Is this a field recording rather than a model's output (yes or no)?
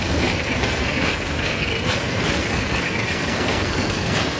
no